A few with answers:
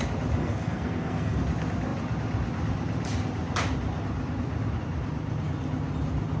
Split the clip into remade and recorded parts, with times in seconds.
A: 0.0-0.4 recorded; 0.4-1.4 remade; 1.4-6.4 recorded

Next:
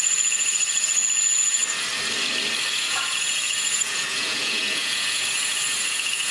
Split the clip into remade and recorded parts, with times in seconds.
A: 0.0-1.6 remade; 1.6-2.8 recorded; 2.8-6.3 remade

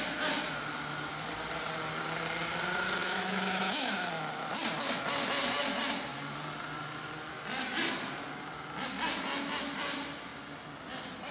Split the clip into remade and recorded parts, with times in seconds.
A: 0.0-3.0 recorded; 3.0-3.9 remade; 3.9-11.3 recorded

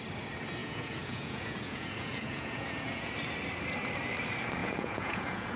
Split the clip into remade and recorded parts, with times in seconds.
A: 0.0-0.6 recorded; 0.6-3.1 remade; 3.1-4.6 recorded; 4.6-5.6 remade

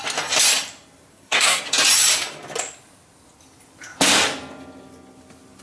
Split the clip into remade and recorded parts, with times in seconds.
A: 0.0-1.1 recorded; 1.1-1.6 remade; 1.6-5.6 recorded

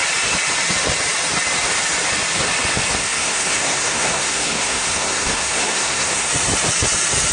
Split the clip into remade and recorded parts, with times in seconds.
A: 0.0-3.0 recorded; 3.0-6.3 remade; 6.3-7.3 recorded